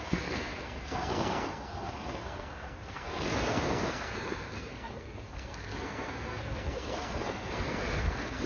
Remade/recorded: remade